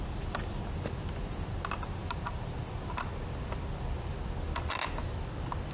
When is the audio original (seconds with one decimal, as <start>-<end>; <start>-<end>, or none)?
0.0-5.7